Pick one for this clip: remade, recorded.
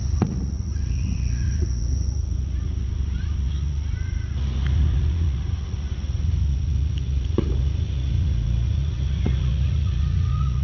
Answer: remade